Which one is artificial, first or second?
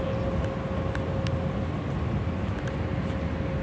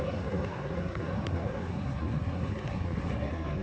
second